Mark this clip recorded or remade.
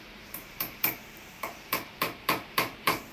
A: remade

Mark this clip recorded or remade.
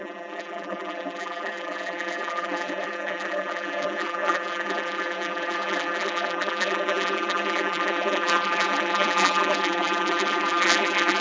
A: remade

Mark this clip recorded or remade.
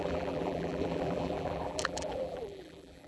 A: remade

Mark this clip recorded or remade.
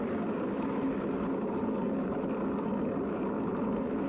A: recorded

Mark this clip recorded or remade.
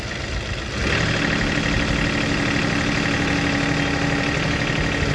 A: recorded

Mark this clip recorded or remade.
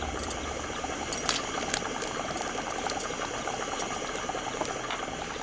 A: recorded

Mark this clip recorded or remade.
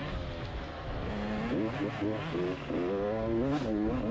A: recorded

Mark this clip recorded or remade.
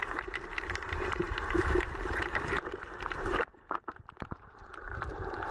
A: remade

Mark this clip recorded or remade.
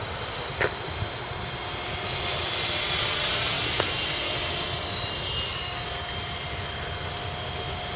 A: recorded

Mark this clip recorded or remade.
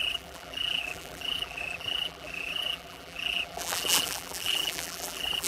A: remade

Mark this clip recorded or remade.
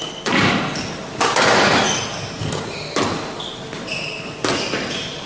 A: recorded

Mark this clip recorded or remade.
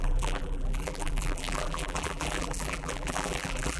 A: remade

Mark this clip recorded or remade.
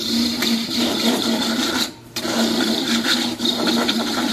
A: remade